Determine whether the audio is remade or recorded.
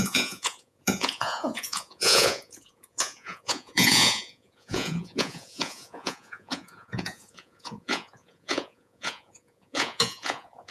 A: remade